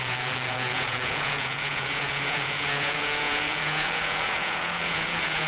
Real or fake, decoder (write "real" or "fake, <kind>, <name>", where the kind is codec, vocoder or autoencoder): fake, vocoder, Vocos